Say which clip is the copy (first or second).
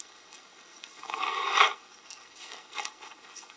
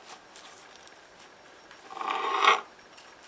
first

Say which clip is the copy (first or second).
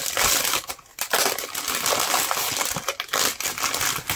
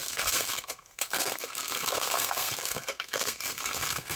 second